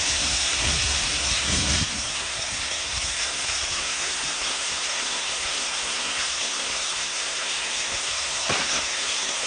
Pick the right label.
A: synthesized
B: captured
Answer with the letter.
A